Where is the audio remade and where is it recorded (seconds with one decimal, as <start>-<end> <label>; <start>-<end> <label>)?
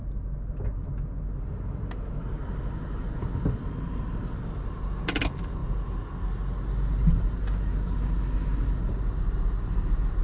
0.0-10.2 recorded